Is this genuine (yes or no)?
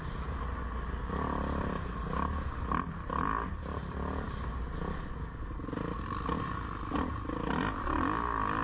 yes